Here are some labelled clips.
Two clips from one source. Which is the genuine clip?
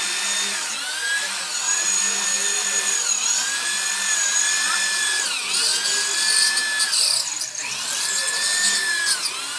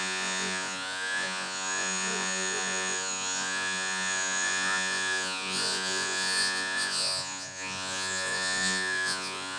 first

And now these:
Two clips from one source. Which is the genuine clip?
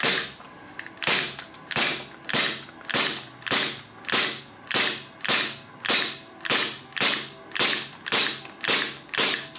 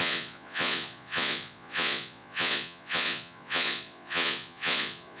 first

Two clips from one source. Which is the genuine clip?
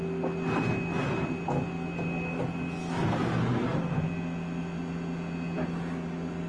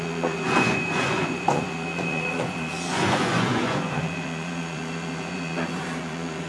first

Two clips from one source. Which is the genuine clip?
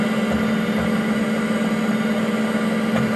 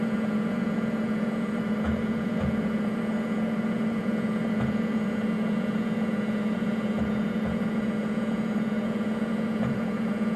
first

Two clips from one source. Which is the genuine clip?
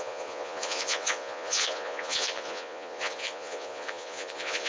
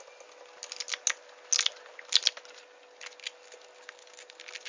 second